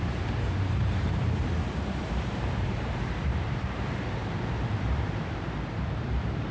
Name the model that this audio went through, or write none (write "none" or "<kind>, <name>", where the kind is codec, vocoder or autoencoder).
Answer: vocoder, BigVGAN v2